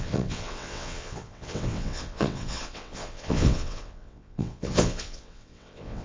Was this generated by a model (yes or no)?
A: yes